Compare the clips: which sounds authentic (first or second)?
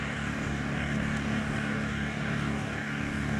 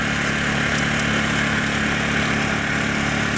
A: second